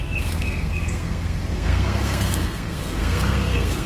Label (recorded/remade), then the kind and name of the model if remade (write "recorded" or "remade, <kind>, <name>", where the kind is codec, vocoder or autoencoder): remade, codec, SNAC